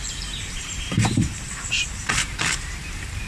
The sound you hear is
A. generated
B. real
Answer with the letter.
A